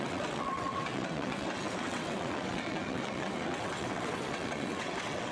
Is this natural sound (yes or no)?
no